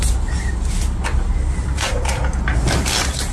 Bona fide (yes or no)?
yes